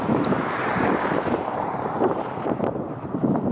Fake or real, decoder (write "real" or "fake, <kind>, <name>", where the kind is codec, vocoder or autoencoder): fake, vocoder, BigVGAN v2